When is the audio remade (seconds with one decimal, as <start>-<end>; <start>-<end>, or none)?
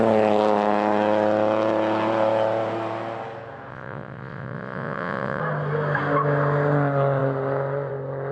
3.7-5.4